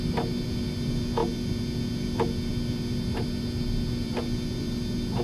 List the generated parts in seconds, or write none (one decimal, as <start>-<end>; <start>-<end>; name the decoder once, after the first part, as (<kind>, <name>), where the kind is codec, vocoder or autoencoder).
none